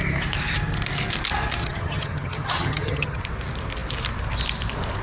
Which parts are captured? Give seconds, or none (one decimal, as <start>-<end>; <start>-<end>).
0.0-1.6; 3.2-5.0